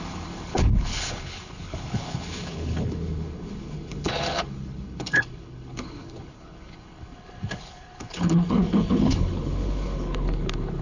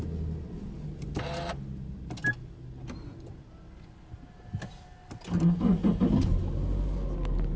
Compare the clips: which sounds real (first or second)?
second